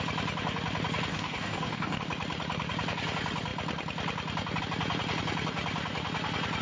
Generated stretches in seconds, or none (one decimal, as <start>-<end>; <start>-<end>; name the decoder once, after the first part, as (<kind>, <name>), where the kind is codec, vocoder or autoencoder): 1.1-2.0 (codec, DAC)